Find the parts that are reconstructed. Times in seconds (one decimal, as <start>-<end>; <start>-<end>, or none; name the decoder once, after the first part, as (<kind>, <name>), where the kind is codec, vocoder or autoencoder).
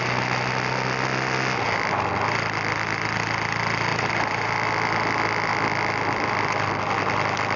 3.9-4.5 (vocoder, BigVGAN v2)